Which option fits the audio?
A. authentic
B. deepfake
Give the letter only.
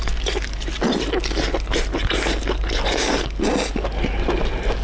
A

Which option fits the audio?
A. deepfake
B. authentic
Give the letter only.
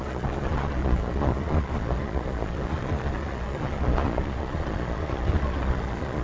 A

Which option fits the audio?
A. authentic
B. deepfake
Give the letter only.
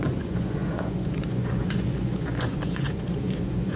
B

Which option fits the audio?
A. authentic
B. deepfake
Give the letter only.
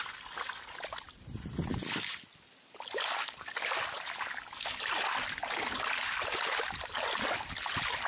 A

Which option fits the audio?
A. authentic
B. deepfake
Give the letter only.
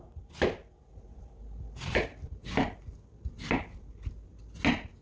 A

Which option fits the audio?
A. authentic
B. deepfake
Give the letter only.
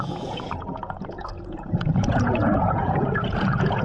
B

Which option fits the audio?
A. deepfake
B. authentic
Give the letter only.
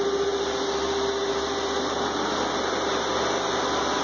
B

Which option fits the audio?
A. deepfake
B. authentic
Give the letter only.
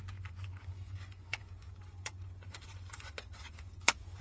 A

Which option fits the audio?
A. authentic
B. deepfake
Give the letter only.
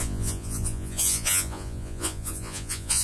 B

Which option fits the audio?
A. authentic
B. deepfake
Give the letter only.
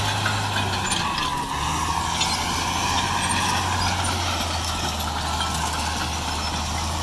A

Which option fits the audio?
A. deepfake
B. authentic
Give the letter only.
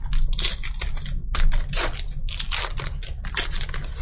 B